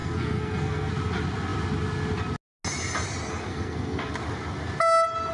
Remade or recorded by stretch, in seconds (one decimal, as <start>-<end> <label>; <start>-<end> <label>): 0.0-0.9 remade; 0.9-3.5 recorded; 3.5-4.1 remade; 4.1-5.3 recorded